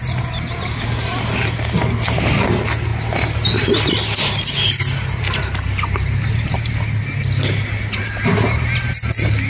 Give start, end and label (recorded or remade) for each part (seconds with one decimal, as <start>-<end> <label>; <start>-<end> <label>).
0.0-9.5 recorded